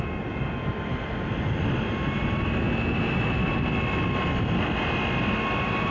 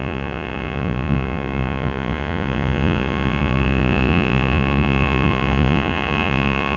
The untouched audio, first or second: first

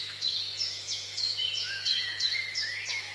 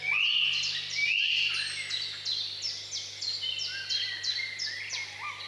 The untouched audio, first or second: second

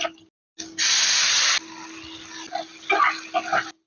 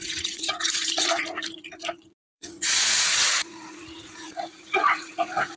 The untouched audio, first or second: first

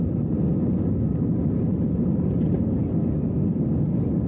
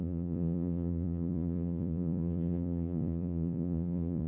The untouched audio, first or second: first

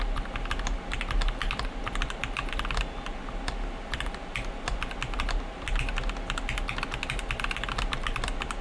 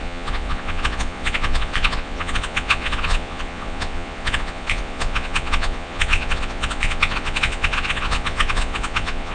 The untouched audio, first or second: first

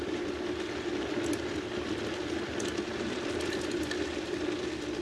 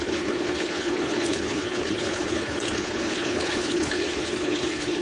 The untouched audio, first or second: first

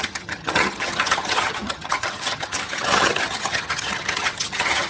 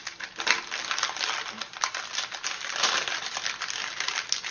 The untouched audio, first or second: second